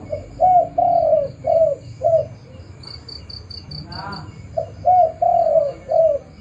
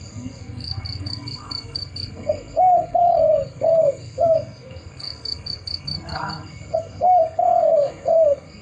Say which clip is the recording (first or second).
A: first